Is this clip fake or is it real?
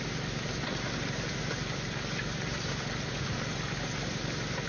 real